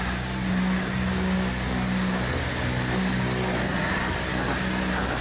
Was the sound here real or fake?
real